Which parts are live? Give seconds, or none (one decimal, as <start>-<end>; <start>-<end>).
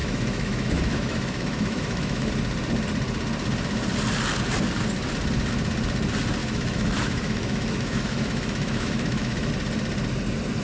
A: 2.3-6.4; 9.5-10.6